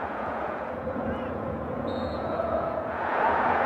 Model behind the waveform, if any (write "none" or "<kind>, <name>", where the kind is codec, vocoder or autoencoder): vocoder, Vocos